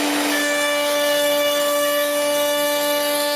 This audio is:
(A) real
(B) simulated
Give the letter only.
B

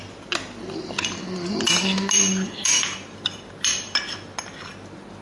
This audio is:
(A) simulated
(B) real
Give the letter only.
B